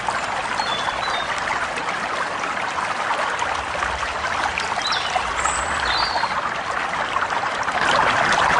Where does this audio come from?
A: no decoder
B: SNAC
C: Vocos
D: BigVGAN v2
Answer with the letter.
A